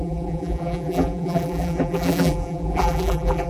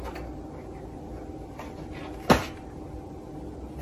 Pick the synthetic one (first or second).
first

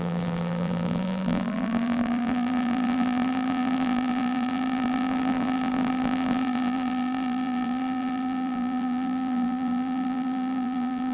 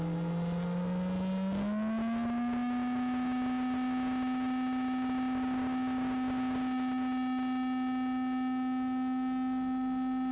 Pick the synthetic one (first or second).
first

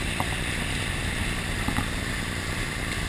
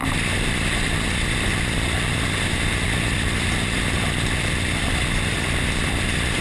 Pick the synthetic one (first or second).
second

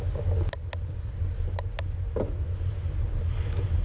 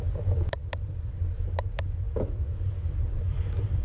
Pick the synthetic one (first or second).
second